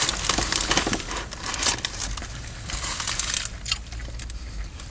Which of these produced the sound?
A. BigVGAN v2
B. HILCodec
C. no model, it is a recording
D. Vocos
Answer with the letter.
C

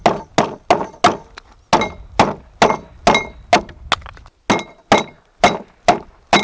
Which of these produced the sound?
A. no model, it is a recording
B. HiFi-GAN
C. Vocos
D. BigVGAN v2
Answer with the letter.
A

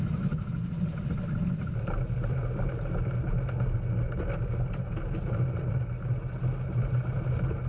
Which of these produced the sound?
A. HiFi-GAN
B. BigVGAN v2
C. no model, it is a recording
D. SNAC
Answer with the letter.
C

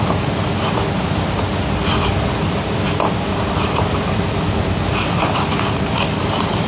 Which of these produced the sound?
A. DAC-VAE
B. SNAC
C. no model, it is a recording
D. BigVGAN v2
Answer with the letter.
C